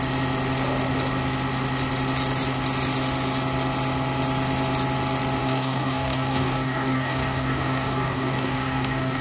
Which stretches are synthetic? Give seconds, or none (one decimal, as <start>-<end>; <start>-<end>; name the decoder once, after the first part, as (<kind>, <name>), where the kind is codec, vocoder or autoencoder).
5.4-9.2 (codec, DAC)